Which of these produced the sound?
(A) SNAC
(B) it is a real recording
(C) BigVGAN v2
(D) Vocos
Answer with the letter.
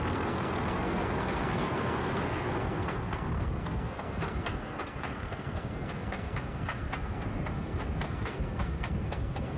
A